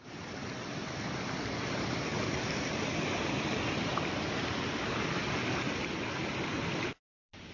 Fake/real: fake